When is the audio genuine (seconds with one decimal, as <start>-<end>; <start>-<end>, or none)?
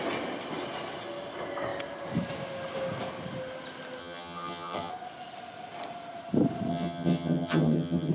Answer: 0.0-4.0; 4.9-6.7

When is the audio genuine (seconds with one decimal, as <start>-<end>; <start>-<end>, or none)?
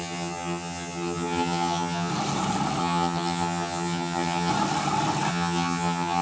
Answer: 2.1-2.8; 4.5-5.3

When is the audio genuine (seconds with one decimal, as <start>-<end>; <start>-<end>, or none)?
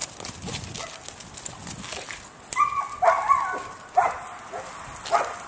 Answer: 0.0-5.5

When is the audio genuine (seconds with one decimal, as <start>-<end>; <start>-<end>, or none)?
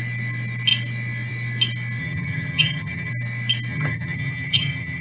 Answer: 0.0-2.0; 3.1-3.7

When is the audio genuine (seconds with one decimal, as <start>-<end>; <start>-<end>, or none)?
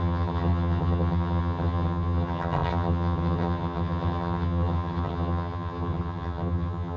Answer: none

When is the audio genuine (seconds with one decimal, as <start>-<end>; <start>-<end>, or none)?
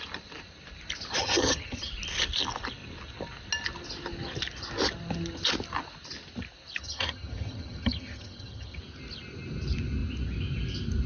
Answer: 0.0-1.2; 1.9-6.8; 8.8-11.1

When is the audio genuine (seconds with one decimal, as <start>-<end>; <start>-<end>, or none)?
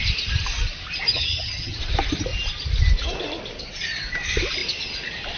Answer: 0.0-1.1; 1.8-5.4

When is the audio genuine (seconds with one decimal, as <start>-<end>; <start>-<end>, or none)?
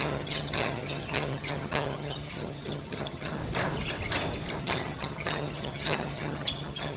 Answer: 3.4-4.6